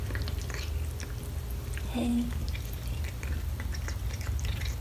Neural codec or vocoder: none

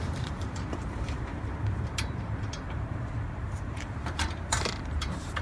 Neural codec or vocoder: vocoder, BigVGAN v2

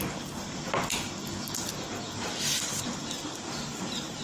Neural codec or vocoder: none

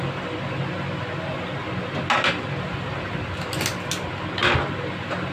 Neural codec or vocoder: none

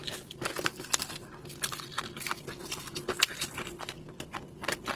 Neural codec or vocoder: vocoder, BigVGAN v2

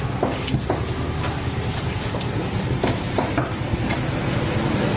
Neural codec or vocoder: none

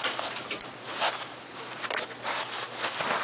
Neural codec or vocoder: vocoder, BigVGAN v2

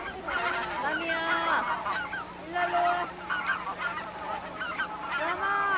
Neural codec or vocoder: none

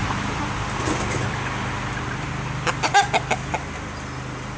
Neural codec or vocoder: none